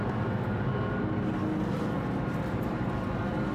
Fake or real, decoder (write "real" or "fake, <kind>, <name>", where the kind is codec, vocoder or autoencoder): real